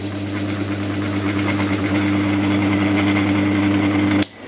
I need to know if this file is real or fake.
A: real